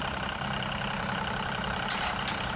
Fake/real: fake